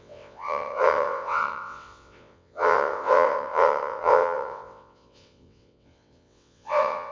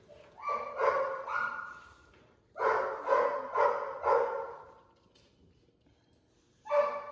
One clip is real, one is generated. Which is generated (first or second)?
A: first